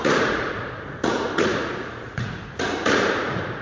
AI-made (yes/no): yes